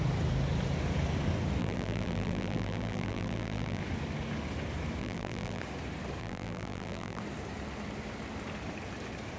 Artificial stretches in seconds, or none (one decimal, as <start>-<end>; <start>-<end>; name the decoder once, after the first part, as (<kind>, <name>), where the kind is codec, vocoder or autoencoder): 1.6-3.8 (vocoder, BigVGAN v2); 5.0-5.6; 6.2-7.2